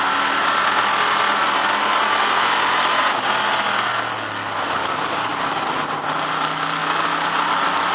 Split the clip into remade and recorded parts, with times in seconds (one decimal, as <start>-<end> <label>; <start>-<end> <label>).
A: 0.0-4.8 recorded; 4.8-5.3 remade; 5.3-7.9 recorded